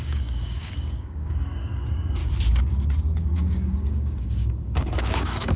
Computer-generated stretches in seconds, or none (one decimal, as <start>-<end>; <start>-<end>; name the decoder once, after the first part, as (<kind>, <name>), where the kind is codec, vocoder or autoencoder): 0.0-2.2 (codec, DAC); 3.0-5.6